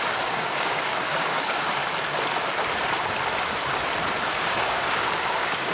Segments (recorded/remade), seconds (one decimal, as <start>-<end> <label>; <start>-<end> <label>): 0.0-1.8 remade; 1.8-4.2 recorded; 4.2-5.7 remade